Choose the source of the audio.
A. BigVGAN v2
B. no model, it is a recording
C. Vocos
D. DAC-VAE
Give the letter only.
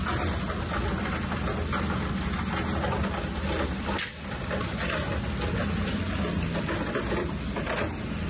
B